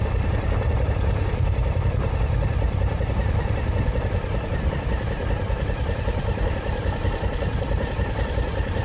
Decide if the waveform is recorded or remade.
remade